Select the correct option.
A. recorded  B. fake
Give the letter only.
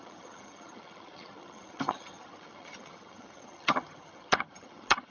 B